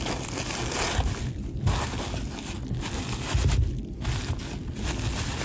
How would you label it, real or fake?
real